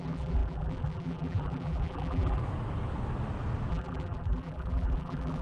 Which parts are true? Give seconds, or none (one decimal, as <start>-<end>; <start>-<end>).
2.4-3.7